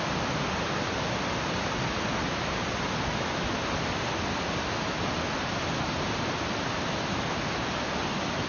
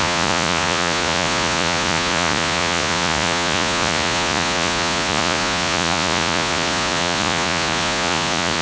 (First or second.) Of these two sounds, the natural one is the first